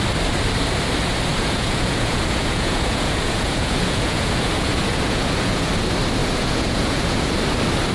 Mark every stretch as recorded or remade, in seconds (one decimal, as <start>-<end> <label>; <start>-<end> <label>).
0.0-1.3 recorded; 1.3-5.7 remade; 5.7-6.2 recorded; 6.2-7.3 remade; 7.3-7.9 recorded